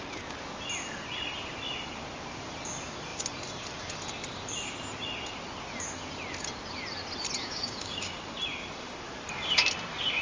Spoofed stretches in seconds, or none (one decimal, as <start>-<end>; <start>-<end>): 7.4-8.2